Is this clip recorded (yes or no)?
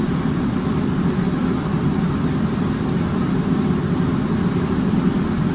yes